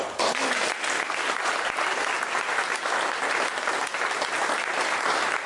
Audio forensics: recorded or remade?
recorded